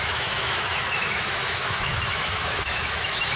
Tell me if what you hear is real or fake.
fake